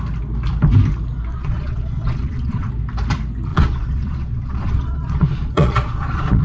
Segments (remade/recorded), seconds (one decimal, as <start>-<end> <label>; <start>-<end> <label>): 0.0-1.3 recorded; 1.3-2.7 remade; 2.7-3.5 recorded; 3.5-6.4 remade